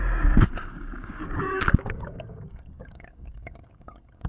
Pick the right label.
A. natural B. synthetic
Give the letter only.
B